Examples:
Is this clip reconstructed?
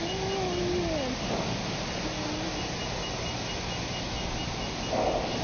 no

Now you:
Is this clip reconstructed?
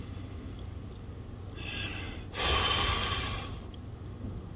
no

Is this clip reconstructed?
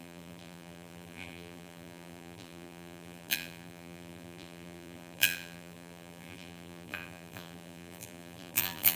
yes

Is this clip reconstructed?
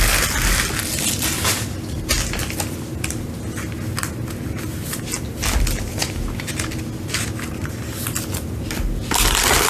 no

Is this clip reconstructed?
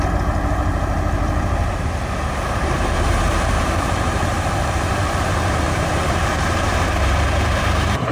yes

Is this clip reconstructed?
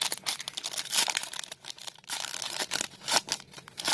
yes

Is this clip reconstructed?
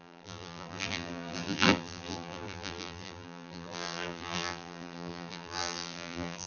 yes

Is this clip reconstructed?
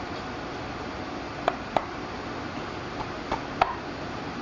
yes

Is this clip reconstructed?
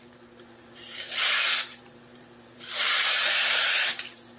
yes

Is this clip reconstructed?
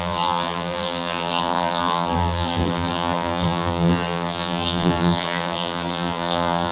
yes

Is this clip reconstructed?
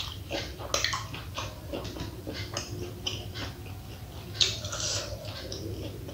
no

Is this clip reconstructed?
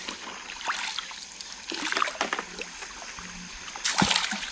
no